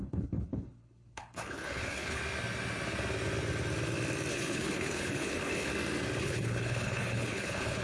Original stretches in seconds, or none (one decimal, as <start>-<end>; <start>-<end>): 2.2-4.3; 5.7-6.2

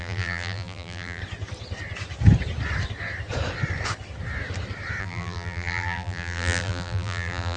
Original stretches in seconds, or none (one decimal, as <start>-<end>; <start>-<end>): 1.2-5.0

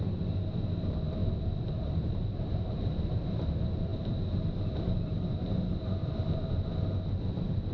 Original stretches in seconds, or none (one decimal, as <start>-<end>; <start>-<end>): 0.0-3.9; 4.9-7.7

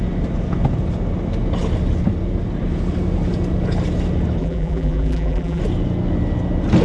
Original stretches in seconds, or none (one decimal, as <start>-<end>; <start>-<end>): 0.0-4.4; 5.6-6.8